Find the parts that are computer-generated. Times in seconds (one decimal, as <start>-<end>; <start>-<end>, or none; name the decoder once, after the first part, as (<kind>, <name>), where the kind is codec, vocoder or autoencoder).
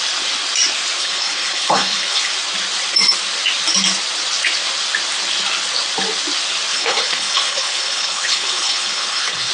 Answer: 1.0-2.3 (codec, HILCodec); 6.7-9.5